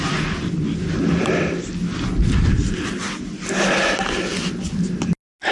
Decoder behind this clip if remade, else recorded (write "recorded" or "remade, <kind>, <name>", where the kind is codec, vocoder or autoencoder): recorded